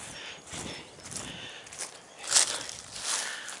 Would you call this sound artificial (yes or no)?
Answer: no